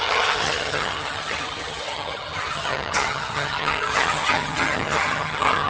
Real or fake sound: fake